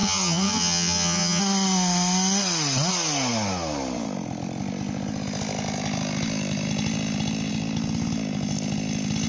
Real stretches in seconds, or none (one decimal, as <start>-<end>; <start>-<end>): 1.4-9.3